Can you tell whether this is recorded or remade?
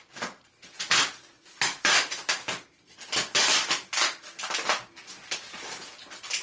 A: recorded